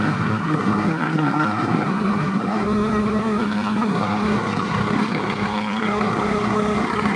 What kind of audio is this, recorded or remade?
remade